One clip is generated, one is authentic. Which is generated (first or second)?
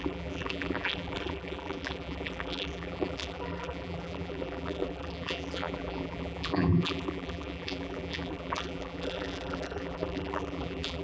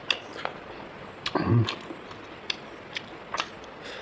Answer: first